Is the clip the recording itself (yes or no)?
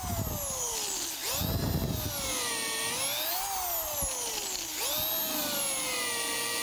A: yes